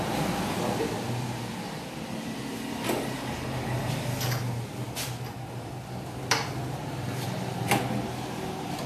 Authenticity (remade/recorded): recorded